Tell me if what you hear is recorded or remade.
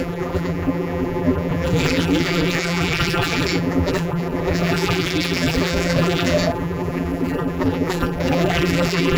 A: remade